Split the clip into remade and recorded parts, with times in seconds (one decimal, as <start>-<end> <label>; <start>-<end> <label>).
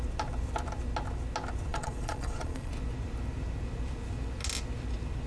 0.0-1.7 recorded; 1.7-2.7 remade; 2.7-5.3 recorded